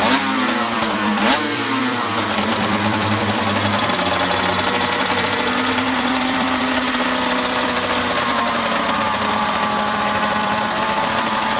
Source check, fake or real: fake